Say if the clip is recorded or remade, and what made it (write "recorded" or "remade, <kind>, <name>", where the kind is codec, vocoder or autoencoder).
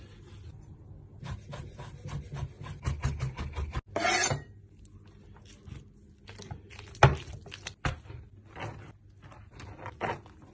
recorded